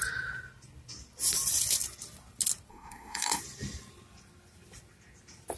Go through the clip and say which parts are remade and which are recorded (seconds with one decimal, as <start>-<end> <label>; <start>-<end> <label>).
0.0-2.7 recorded; 2.7-3.4 remade; 3.4-5.6 recorded